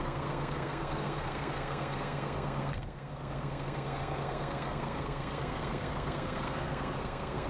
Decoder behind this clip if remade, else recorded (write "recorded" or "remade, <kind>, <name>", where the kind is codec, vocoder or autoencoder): remade, codec, SNAC